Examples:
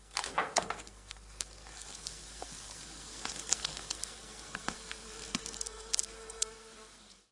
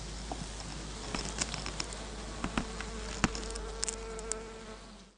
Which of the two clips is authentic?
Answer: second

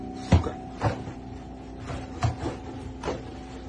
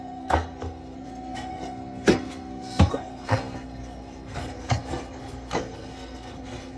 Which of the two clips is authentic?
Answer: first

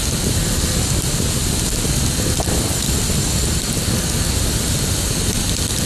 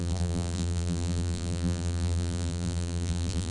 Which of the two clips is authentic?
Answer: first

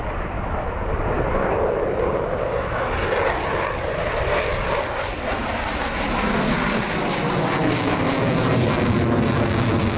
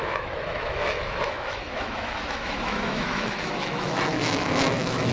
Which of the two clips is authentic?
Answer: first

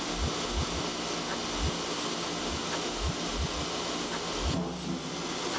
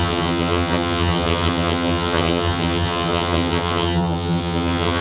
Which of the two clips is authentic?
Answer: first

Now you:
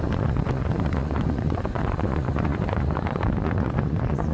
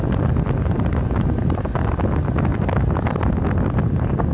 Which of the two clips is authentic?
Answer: second